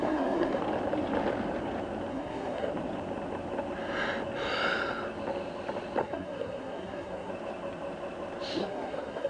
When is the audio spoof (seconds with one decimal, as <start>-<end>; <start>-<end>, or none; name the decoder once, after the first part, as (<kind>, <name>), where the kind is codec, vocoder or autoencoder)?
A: 0.0-0.6 (codec, SNAC); 2.1-2.7; 6.0-7.3; 8.6-9.3

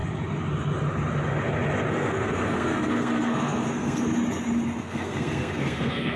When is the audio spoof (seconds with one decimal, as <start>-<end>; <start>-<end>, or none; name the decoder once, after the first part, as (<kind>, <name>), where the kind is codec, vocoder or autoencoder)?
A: 1.9-4.1 (codec, SNAC); 4.8-6.2